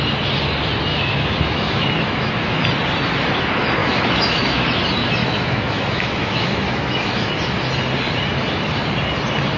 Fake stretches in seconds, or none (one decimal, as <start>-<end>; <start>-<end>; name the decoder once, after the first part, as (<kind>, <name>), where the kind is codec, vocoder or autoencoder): 0.9-2.5 (autoencoder, DAC-VAE); 3.8-4.8; 5.2-7.3